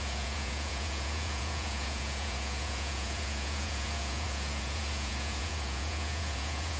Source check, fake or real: fake